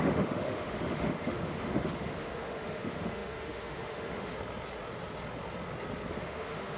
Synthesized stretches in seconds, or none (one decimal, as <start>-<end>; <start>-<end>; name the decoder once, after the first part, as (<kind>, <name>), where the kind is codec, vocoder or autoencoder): 0.0-4.3 (autoencoder, DAC-VAE); 6.1-6.8